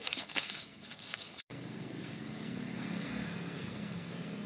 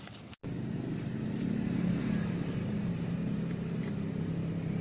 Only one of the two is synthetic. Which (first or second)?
first